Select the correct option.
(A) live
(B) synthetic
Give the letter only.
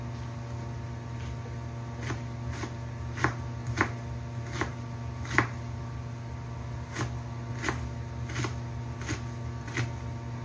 A